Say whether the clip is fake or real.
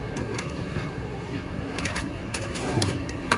fake